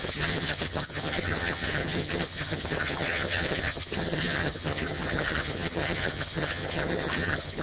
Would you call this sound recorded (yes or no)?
no